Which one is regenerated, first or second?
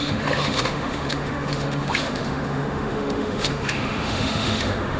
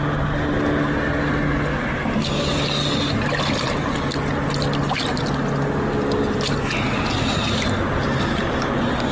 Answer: first